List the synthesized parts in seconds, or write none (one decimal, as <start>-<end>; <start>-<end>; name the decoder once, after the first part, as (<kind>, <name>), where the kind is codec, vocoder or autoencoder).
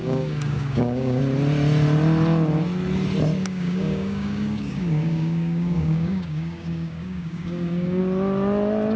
0.0-1.2 (codec, DAC); 3.4-8.0